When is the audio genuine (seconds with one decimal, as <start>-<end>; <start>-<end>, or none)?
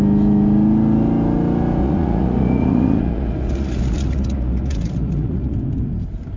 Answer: 0.0-1.8; 5.6-6.4